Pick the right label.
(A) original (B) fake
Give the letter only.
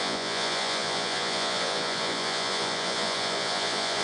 B